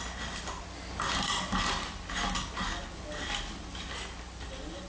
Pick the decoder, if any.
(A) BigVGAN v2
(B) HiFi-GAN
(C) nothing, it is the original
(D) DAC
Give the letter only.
C